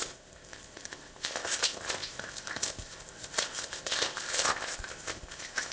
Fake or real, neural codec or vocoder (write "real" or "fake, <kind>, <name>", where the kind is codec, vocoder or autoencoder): fake, codec, ZipCodec